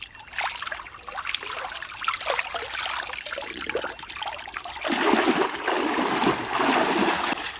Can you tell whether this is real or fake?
real